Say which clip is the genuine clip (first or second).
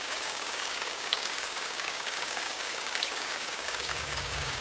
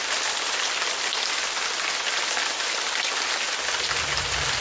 second